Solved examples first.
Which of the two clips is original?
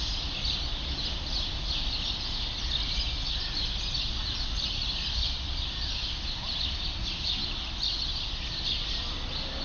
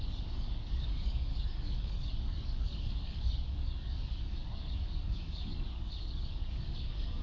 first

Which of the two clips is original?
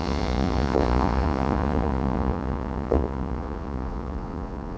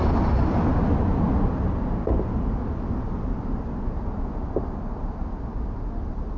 second